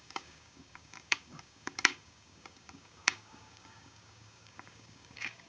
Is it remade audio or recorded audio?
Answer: remade